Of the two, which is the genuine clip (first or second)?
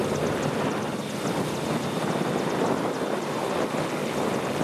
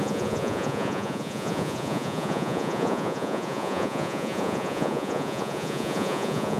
first